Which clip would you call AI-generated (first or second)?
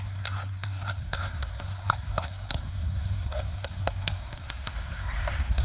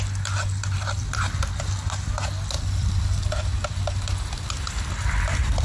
first